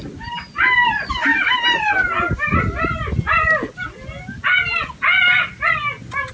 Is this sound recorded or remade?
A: recorded